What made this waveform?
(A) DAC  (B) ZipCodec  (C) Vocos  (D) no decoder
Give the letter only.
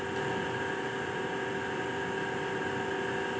D